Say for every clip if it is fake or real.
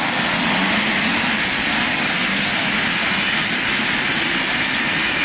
real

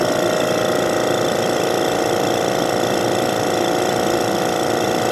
fake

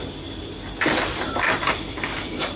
real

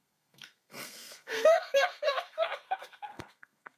fake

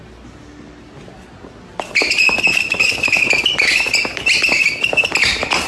real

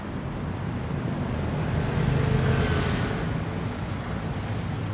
real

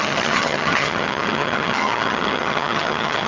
fake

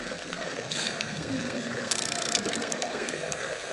fake